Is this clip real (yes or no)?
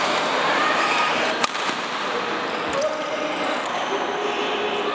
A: yes